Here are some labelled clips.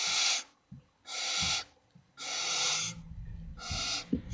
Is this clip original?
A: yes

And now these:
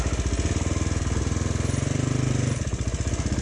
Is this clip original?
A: yes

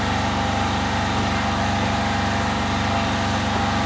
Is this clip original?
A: yes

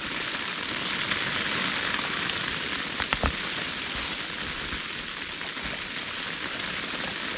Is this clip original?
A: yes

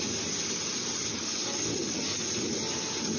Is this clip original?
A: yes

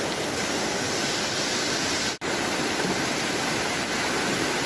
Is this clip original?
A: no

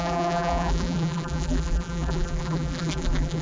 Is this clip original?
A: no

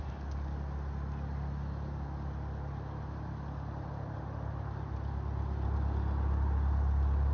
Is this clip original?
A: yes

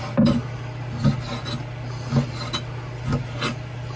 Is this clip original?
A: yes